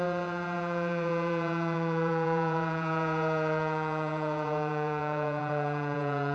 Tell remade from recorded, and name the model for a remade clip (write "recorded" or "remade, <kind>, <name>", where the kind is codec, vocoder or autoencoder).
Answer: remade, vocoder, Vocos